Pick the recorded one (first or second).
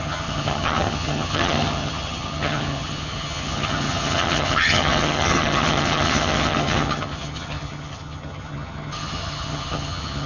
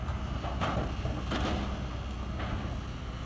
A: second